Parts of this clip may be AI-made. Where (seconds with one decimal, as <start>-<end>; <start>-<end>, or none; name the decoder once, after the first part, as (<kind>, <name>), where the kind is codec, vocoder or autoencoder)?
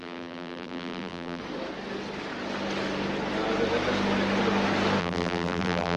0.0-1.4 (vocoder, BigVGAN v2); 5.0-6.0